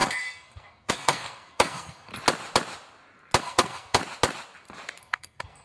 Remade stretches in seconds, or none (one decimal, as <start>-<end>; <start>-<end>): 0.0-2.1; 3.4-4.0; 5.0-5.6